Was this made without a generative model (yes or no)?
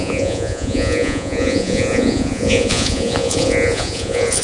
no